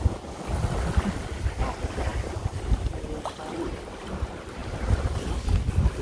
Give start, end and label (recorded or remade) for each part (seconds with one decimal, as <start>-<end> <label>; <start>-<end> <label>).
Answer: 0.0-6.0 recorded